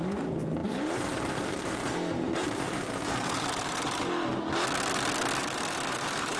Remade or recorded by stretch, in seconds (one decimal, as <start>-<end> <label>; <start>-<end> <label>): 0.0-4.3 remade; 4.3-5.4 recorded; 5.4-6.4 remade